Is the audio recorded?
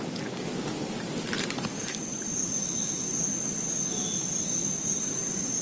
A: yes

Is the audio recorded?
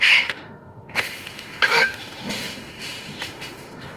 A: no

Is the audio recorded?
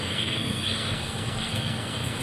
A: no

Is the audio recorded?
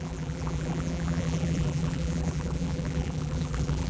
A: no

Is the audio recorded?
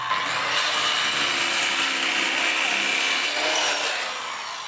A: yes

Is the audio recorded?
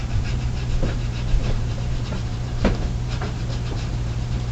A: no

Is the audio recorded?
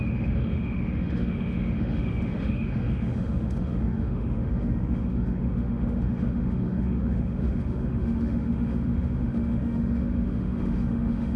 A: no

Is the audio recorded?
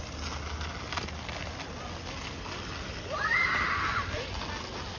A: yes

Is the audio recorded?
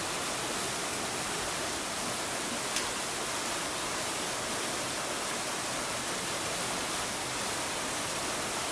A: yes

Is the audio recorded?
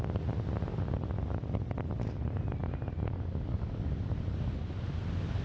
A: yes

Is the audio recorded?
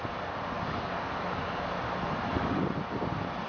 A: yes